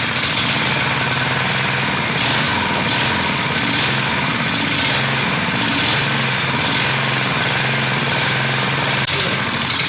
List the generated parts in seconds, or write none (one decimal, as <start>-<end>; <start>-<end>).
none